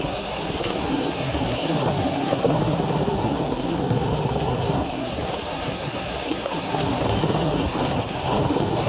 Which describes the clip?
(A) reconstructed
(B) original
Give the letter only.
A